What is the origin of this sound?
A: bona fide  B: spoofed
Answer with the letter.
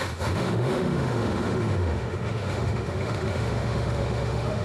B